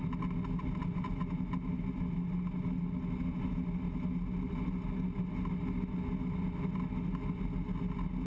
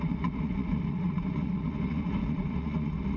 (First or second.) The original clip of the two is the first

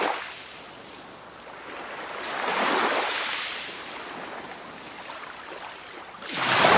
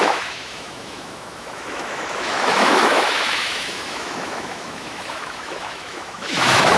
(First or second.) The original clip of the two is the first